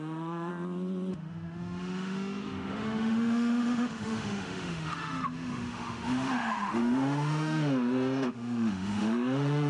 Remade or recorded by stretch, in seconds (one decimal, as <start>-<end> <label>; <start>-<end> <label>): 0.0-0.5 remade; 0.5-1.1 recorded; 1.1-9.7 remade